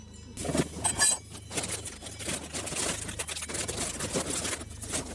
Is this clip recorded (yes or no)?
yes